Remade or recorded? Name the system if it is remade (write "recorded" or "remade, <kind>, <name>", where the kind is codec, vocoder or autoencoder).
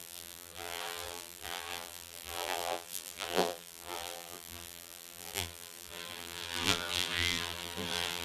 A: remade, vocoder, BigVGAN v2